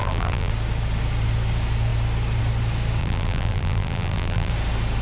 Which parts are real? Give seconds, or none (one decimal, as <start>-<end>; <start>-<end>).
0.5-3.0; 4.5-5.0